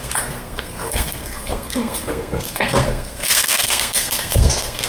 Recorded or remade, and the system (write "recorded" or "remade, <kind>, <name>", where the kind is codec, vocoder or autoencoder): remade, codec, SNAC